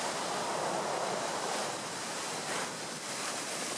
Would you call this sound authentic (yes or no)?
no